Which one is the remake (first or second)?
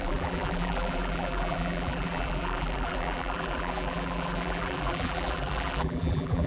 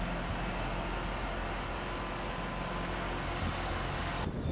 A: first